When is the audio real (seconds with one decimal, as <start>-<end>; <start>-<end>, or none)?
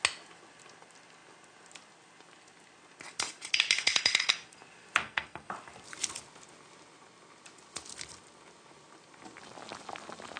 0.0-5.0; 5.5-10.4